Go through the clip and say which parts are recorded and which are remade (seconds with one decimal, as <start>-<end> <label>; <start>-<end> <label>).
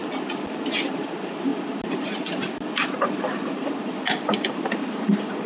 0.0-5.5 recorded